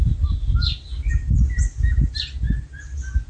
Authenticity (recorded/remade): recorded